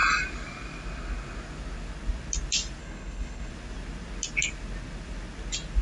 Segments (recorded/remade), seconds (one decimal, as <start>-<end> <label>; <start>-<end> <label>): 0.0-2.8 recorded; 2.8-3.5 remade; 3.5-5.8 recorded